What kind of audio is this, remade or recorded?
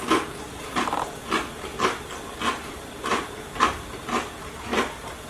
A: recorded